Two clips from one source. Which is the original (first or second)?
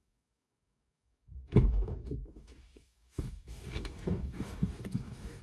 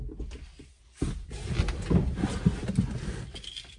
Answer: second